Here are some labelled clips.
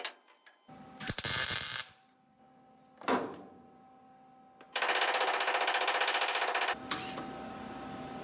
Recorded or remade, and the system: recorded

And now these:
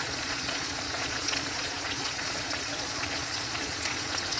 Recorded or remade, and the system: remade, vocoder, Vocos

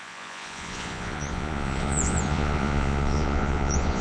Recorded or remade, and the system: remade, vocoder, Vocos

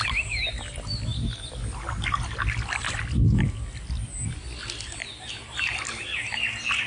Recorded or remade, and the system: recorded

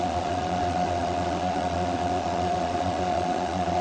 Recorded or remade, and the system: remade, vocoder, Vocos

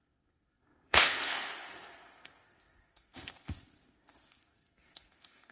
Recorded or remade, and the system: remade, codec, SNAC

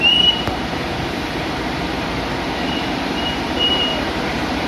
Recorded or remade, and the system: remade, vocoder, BigVGAN v2